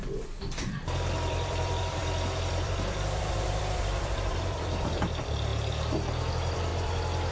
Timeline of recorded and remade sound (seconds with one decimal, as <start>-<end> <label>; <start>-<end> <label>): 0.0-5.5 remade; 5.5-6.3 recorded; 6.3-6.7 remade; 6.7-7.3 recorded